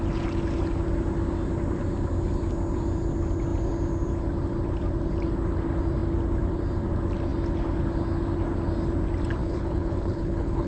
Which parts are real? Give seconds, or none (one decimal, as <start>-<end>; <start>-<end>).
0.0-9.4